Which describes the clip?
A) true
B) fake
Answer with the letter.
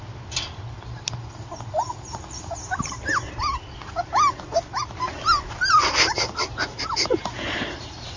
A